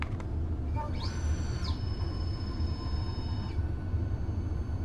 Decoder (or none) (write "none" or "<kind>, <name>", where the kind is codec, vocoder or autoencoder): vocoder, BigVGAN v2